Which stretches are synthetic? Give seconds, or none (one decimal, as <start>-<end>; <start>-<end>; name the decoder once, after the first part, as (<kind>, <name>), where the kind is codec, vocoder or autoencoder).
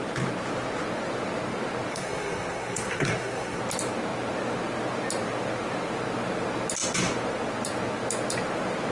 1.9-3.6 (codec, SNAC)